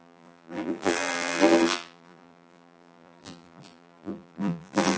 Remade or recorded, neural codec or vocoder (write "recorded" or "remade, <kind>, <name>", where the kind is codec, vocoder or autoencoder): remade, vocoder, BigVGAN v2